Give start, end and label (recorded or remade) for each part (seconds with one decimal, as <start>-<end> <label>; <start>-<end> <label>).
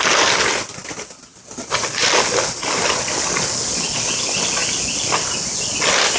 0.0-6.2 recorded